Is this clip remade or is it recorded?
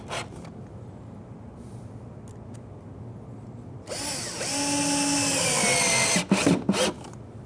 recorded